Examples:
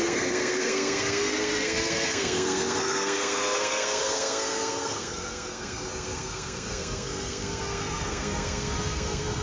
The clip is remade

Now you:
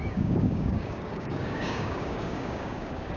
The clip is remade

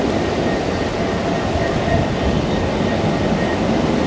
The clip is recorded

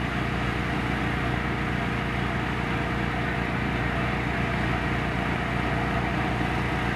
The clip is recorded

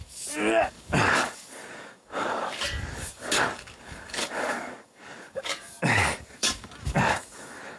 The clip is remade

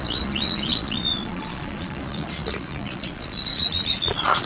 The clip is remade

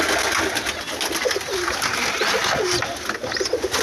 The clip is recorded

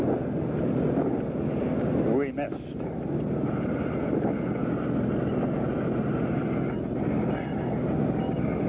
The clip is recorded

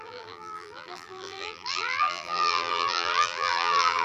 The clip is remade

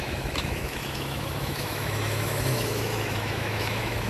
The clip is remade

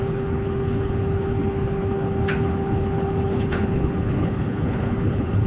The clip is remade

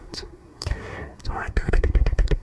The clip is remade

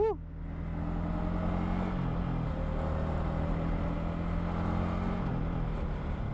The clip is recorded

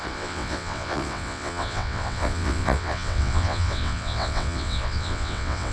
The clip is remade